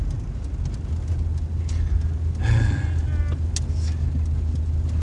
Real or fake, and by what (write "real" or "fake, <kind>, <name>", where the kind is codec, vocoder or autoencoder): real